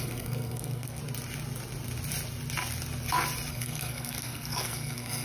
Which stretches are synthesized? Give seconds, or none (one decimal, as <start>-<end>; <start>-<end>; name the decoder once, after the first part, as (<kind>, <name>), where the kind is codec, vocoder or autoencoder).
0.0-1.0 (codec, SNAC); 3.5-5.2

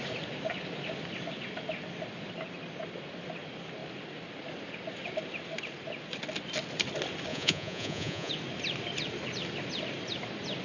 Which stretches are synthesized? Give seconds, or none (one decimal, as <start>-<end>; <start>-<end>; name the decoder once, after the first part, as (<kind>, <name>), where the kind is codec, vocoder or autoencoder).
7.3-8.3 (vocoder, Vocos)

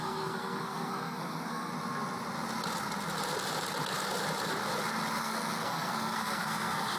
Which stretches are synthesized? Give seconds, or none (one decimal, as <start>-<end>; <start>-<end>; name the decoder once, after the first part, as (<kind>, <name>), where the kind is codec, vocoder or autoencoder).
0.0-1.7 (codec, SNAC); 5.2-7.0